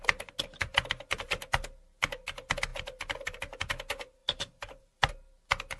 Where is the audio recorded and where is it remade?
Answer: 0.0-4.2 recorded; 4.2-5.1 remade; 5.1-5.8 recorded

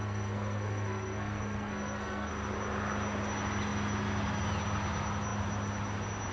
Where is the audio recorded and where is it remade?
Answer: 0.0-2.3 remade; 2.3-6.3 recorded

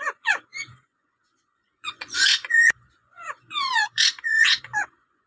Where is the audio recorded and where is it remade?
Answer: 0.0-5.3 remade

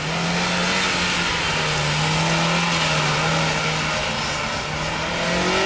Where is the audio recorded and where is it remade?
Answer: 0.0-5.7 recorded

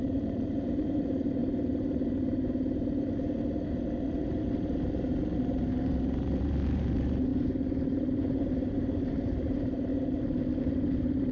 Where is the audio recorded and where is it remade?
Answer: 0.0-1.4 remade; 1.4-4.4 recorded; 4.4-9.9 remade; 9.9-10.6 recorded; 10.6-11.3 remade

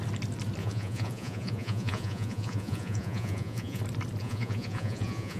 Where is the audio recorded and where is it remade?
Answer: 0.0-0.6 recorded; 0.6-3.8 remade; 3.8-4.2 recorded; 4.2-5.4 remade

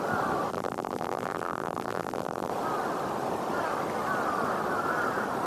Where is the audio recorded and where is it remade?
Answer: 0.0-0.5 recorded; 0.5-2.5 remade; 2.5-5.5 recorded

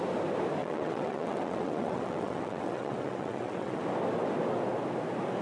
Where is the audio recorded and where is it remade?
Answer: 0.0-0.6 recorded; 0.6-3.8 remade; 3.8-5.4 recorded